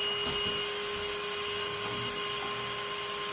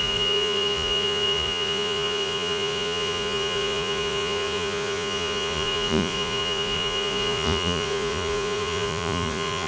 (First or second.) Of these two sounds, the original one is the first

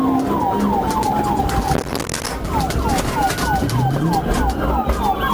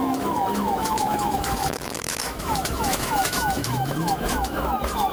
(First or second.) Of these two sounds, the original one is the first